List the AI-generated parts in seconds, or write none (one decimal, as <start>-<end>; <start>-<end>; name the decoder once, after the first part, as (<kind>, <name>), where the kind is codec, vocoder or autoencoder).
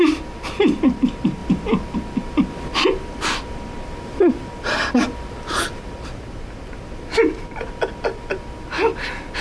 none